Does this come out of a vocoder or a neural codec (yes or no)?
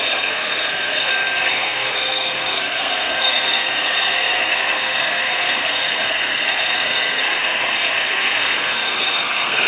yes